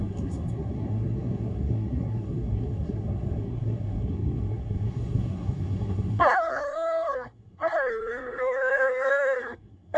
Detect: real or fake fake